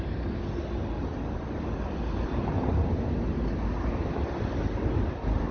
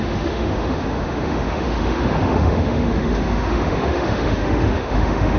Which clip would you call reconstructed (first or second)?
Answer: second